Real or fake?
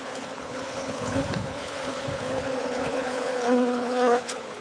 fake